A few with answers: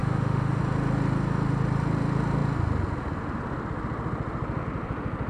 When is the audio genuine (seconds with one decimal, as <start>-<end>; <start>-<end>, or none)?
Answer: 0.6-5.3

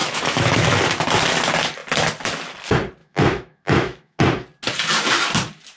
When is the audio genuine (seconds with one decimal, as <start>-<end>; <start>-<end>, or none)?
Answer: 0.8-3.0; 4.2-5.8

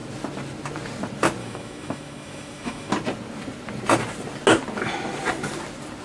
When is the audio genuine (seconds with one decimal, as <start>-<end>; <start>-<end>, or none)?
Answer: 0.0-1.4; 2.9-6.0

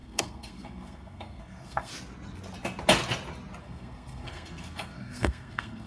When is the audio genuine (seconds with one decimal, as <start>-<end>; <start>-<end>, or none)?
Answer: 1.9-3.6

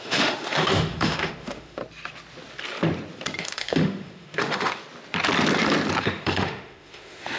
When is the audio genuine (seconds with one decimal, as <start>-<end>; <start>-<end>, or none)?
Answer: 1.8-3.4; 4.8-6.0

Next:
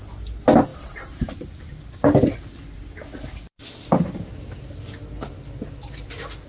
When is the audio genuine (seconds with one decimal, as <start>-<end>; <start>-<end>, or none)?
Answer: 0.0-6.5

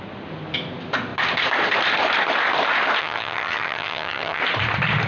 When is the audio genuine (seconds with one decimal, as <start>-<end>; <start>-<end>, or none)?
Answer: 0.0-3.0; 4.4-5.1

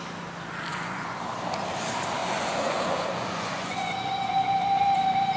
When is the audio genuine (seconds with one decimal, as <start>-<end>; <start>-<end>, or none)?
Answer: 0.0-0.7; 1.2-2.2; 4.3-5.4